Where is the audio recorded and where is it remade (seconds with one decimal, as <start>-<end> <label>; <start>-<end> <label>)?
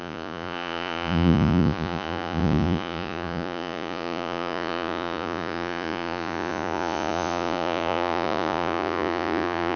0.0-9.8 remade